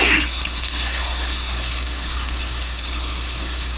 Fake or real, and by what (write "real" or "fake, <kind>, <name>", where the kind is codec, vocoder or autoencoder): fake, codec, SNAC